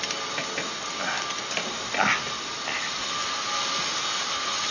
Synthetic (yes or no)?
no